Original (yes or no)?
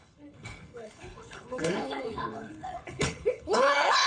no